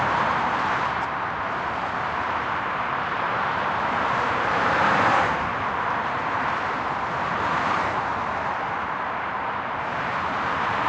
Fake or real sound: fake